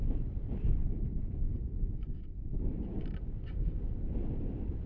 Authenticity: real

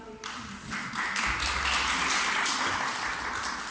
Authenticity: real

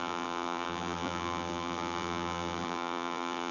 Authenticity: fake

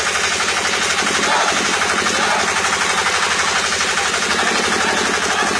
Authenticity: real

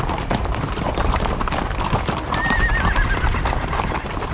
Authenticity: fake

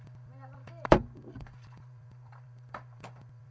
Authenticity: fake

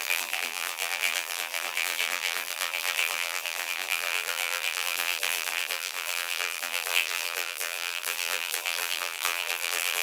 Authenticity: fake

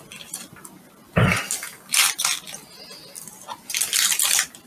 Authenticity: fake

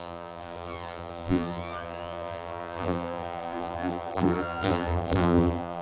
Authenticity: fake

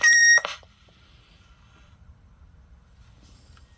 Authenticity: fake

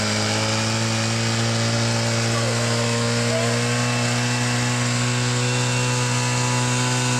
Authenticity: real